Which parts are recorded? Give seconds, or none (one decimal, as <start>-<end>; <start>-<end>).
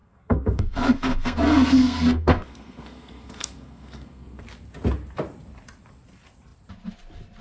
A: 4.4-7.4